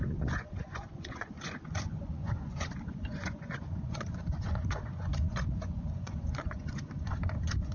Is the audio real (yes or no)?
no